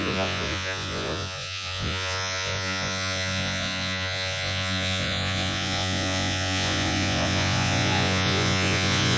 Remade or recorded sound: remade